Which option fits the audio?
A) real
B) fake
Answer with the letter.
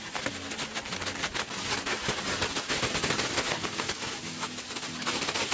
A